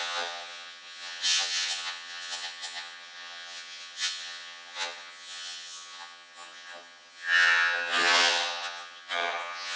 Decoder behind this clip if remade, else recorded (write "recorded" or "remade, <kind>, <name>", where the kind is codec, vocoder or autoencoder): remade, vocoder, HiFi-GAN